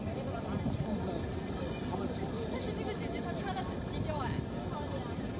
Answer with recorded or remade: recorded